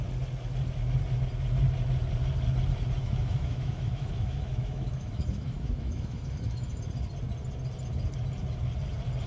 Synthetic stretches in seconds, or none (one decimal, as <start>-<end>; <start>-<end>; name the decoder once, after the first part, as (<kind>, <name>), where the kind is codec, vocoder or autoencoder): 3.0-6.8 (autoencoder, DAC-VAE)